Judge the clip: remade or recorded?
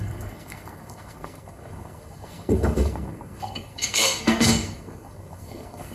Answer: remade